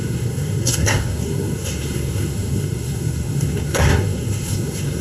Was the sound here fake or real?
fake